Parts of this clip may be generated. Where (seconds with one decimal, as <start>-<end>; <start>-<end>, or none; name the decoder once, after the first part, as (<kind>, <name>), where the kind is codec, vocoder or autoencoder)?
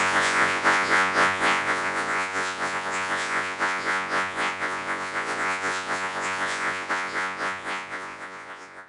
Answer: 0.0-8.9 (vocoder, Vocos)